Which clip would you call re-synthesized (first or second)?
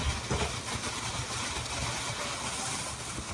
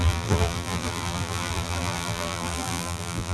second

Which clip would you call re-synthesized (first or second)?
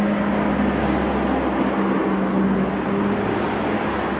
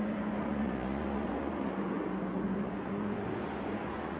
second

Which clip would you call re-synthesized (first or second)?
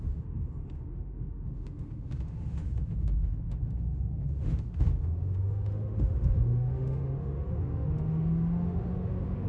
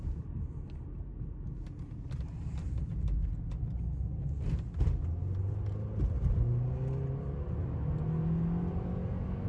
first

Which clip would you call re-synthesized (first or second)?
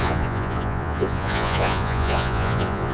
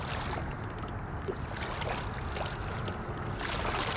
first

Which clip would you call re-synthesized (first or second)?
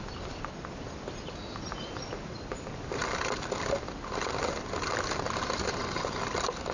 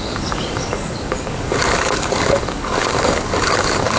second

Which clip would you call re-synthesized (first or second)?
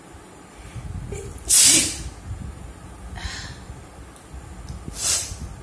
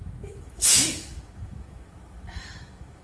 second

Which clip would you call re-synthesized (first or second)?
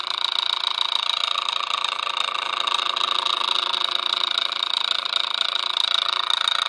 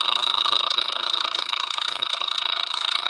second